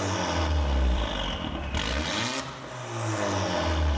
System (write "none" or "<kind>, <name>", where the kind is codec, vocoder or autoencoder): none